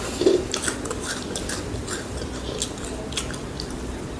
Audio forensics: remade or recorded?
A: recorded